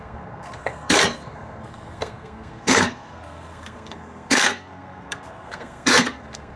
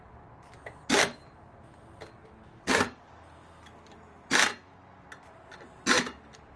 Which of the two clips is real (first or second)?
second